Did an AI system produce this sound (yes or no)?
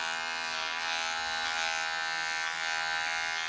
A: no